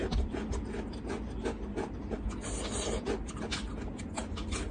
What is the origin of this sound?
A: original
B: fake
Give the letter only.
A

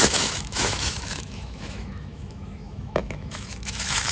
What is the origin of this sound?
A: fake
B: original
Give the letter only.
A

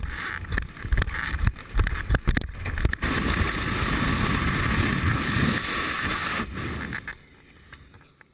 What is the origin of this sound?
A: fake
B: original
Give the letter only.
B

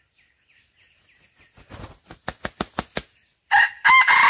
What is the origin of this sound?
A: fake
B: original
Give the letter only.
B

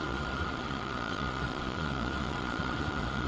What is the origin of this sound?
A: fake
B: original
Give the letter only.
A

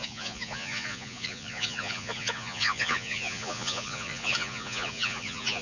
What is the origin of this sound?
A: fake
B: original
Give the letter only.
A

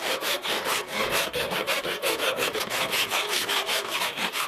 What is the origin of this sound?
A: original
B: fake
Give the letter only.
B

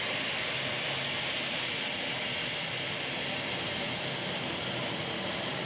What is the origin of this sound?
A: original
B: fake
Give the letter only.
A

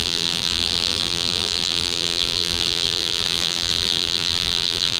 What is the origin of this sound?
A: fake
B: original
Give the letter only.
A